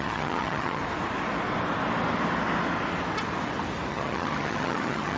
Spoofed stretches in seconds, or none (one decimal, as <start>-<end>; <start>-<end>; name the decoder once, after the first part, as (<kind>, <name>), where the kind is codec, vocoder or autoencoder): 0.0-0.8 (vocoder, HiFi-GAN); 3.9-5.2